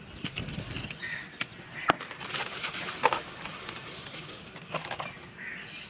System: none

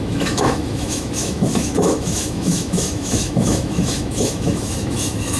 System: autoencoder, DAC-VAE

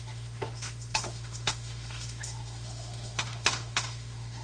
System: autoencoder, DAC-VAE